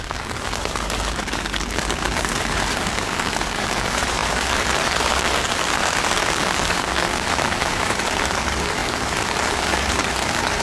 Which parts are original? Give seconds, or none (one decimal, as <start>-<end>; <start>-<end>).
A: none